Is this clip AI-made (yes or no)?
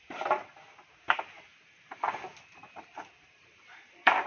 yes